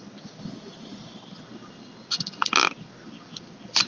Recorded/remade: recorded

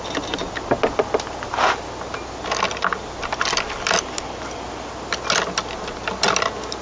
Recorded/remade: recorded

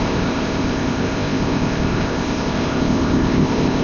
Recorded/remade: remade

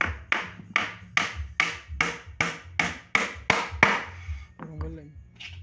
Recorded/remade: recorded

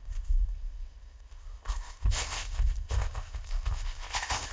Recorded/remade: remade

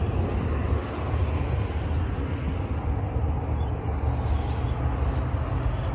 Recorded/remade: recorded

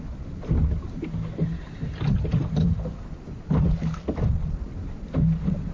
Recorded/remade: recorded